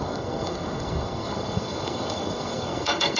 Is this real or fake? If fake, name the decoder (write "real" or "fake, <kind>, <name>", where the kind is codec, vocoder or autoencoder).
fake, codec, SNAC